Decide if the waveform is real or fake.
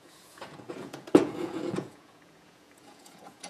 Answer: fake